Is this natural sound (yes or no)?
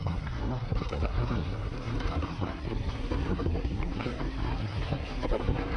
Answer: no